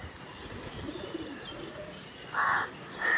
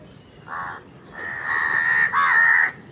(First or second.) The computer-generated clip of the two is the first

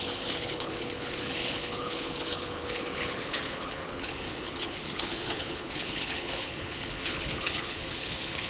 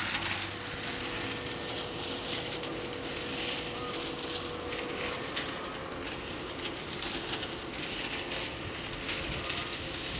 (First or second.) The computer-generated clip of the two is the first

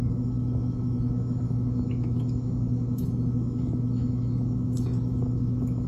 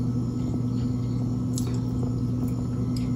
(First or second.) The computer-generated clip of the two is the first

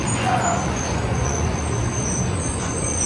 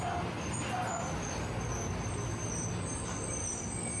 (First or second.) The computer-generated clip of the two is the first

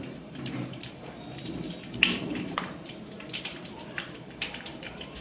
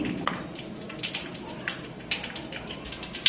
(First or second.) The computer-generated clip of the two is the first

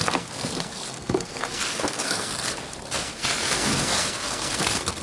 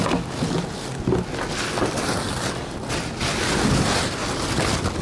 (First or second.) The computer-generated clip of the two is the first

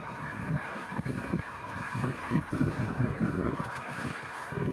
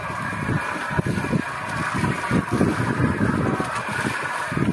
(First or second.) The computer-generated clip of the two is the first